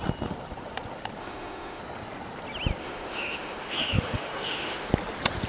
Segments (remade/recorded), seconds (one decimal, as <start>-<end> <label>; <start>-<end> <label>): 0.0-1.2 recorded; 1.2-1.8 remade; 1.8-2.8 recorded; 2.8-4.9 remade; 4.9-5.5 recorded